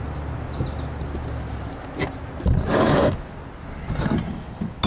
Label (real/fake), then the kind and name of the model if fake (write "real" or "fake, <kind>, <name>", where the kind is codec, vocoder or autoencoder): real